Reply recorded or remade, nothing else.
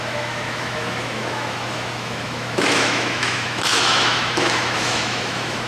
remade